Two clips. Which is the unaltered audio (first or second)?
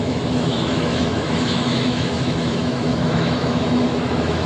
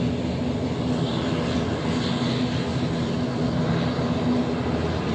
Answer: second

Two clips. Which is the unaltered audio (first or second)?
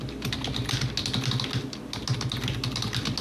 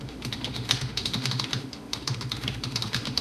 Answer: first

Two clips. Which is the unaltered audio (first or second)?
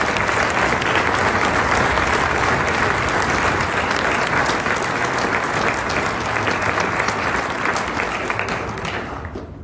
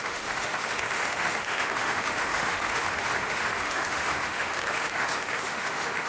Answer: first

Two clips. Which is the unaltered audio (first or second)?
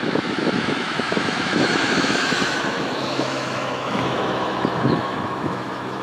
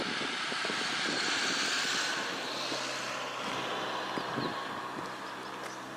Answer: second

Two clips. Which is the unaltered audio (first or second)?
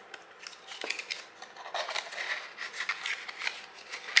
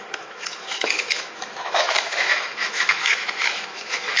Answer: first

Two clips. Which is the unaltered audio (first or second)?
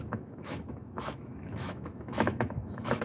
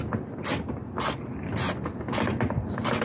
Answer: second